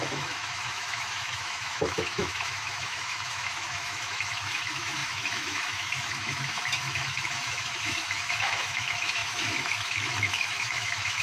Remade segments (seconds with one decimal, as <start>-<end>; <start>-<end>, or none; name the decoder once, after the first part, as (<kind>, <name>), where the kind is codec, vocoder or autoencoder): 0.0-11.2 (autoencoder, DAC-VAE)